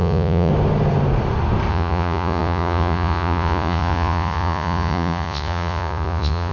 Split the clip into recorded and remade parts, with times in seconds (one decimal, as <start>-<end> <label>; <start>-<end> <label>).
0.0-0.5 remade; 0.5-1.7 recorded; 1.7-6.5 remade

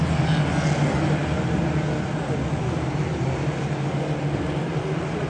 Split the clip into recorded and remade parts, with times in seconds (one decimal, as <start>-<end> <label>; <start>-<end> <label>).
0.0-5.3 recorded

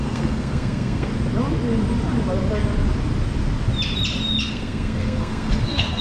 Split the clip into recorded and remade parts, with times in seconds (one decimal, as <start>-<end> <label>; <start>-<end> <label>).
0.0-1.1 remade; 1.1-4.4 recorded; 4.4-6.0 remade

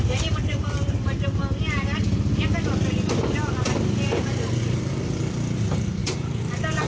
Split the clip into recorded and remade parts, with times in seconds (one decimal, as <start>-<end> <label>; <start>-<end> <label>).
0.0-1.4 remade; 1.4-3.6 recorded; 3.6-6.9 remade

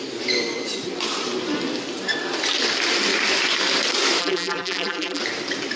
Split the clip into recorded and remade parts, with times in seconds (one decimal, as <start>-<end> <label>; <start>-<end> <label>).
0.0-4.2 recorded; 4.2-5.2 remade; 5.2-5.8 recorded

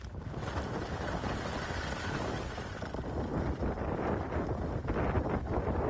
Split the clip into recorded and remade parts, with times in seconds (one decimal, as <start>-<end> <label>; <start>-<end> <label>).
0.0-5.9 recorded

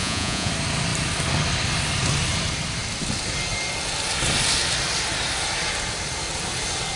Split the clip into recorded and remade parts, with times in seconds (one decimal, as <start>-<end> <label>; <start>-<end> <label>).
0.0-0.5 remade; 0.5-7.0 recorded